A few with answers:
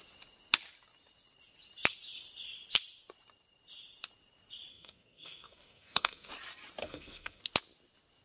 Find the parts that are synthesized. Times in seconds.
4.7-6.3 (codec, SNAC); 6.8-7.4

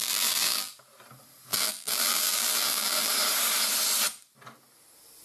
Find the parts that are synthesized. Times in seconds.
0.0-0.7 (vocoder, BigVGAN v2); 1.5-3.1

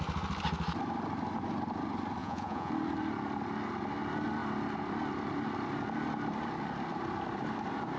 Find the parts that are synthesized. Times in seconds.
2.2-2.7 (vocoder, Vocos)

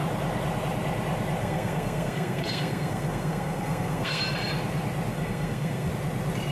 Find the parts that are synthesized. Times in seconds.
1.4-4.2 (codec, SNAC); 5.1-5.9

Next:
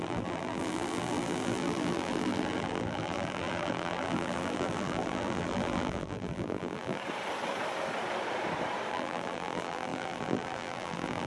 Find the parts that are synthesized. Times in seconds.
0.0-7.0 (vocoder, BigVGAN v2); 8.9-11.3